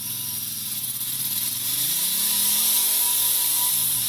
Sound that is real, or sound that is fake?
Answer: real